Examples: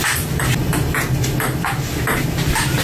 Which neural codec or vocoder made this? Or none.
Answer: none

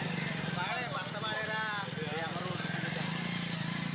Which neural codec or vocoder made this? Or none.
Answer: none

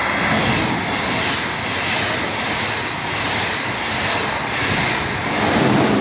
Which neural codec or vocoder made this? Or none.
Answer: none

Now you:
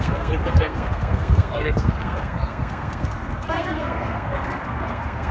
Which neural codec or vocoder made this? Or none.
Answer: codec, SNAC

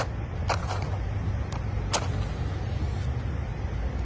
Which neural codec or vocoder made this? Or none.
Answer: none